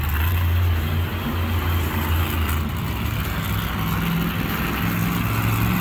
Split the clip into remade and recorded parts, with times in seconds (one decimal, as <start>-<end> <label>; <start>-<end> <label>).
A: 0.0-5.8 recorded